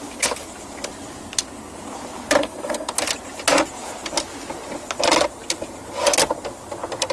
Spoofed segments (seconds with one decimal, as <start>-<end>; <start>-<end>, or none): 2.4-2.9